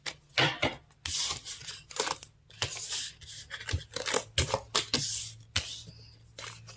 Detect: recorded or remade recorded